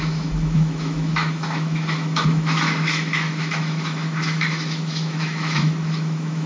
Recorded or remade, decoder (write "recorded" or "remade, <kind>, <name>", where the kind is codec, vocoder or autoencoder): remade, autoencoder, DAC-VAE